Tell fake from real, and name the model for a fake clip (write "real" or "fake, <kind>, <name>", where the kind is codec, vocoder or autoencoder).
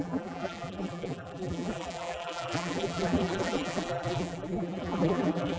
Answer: fake, vocoder, BigVGAN v2